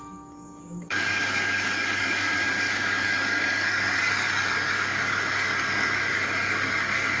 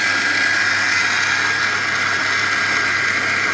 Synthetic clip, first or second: first